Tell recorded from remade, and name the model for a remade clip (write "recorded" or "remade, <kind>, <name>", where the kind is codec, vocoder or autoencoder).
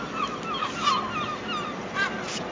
recorded